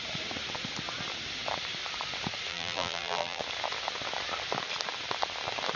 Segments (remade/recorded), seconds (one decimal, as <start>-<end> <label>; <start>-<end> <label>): 0.0-2.5 recorded; 2.5-3.4 remade; 3.4-5.8 recorded